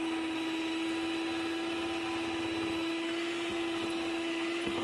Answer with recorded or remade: recorded